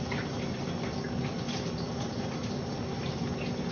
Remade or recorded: recorded